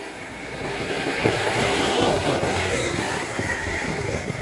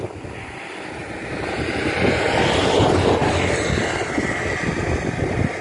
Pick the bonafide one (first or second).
second